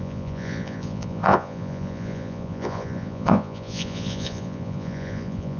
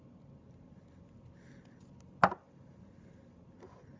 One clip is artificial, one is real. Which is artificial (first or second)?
first